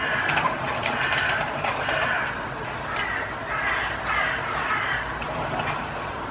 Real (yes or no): yes